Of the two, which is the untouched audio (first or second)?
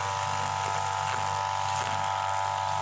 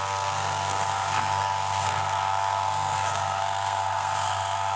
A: first